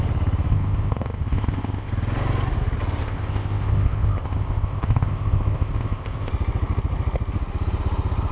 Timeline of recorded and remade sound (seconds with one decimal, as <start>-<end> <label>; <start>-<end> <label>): 0.0-0.5 recorded; 0.5-1.9 remade; 1.9-3.0 recorded; 3.0-6.3 remade; 6.3-8.3 recorded